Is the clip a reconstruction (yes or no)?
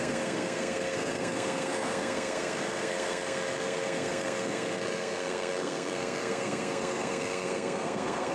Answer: yes